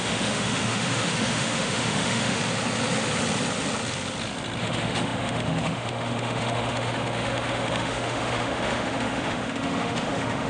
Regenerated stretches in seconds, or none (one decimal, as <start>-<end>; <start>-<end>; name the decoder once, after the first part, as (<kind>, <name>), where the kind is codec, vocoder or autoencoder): 0.0-2.4 (autoencoder, DAC-VAE); 4.6-10.5